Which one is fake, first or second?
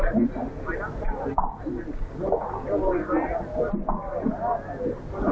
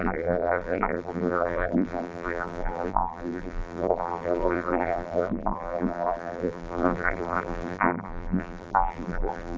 second